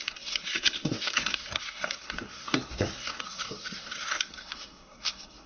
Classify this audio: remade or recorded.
remade